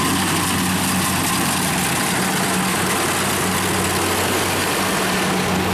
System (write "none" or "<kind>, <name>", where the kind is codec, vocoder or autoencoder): none